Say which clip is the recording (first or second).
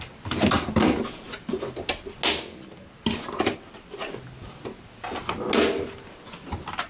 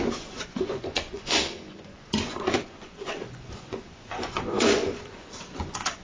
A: first